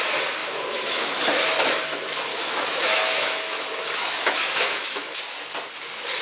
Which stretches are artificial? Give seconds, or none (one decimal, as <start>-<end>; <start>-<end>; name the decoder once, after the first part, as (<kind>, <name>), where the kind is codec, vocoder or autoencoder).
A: 0.4-1.8 (autoencoder, DAC-VAE); 2.3-5.2